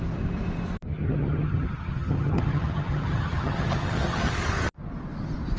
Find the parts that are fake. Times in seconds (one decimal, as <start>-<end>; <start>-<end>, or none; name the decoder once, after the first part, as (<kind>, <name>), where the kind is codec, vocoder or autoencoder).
0.9-4.3 (vocoder, HiFi-GAN)